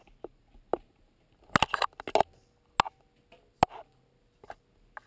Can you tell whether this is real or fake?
real